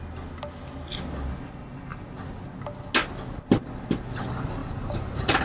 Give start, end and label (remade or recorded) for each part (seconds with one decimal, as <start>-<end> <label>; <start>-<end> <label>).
0.0-4.6 recorded; 4.6-5.4 remade